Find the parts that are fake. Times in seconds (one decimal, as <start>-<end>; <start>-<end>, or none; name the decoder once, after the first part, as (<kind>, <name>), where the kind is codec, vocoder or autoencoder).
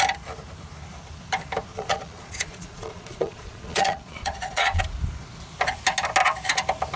1.7-4.8 (vocoder, Vocos)